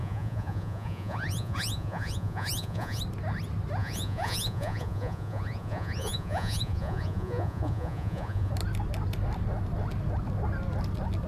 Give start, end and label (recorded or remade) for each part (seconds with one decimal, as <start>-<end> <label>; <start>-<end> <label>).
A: 0.0-3.0 remade; 3.0-3.8 recorded; 3.8-8.5 remade; 8.5-11.3 recorded